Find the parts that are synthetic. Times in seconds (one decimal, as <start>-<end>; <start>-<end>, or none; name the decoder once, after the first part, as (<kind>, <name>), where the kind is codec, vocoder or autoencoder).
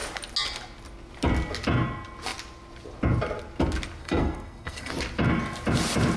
4.0-4.9 (codec, SNAC)